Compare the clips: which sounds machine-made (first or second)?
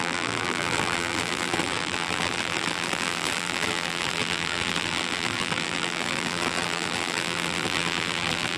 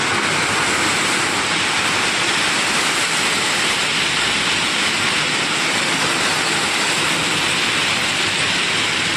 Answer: first